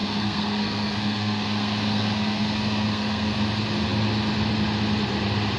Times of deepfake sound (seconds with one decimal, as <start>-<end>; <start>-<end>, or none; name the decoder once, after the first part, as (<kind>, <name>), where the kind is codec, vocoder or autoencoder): 0.0-3.4 (codec, SNAC)